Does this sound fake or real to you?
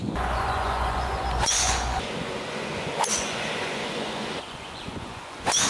fake